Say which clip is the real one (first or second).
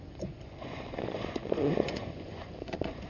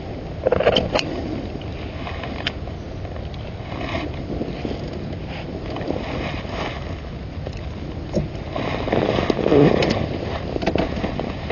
second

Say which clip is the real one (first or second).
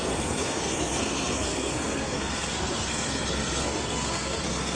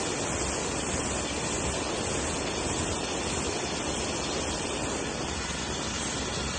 second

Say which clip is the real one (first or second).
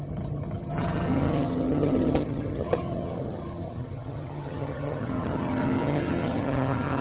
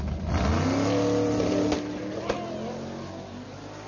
second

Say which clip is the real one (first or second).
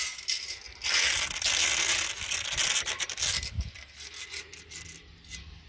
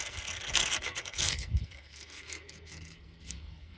first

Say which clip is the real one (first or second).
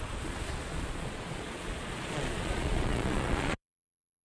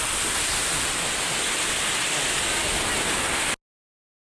second